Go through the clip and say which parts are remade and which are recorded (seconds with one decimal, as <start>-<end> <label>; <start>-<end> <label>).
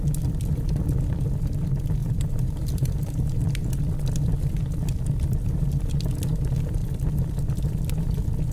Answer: 0.0-2.0 recorded; 2.0-3.7 remade; 3.7-8.5 recorded